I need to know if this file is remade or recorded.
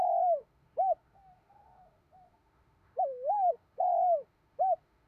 remade